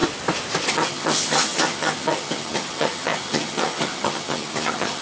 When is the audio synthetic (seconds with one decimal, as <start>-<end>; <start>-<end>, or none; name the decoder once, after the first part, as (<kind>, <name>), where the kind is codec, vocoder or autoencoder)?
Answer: 0.7-5.0 (vocoder, HiFi-GAN)